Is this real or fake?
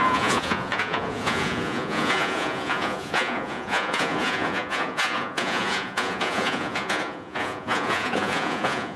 fake